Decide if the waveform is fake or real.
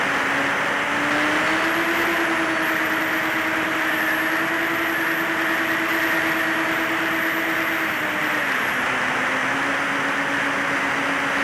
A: real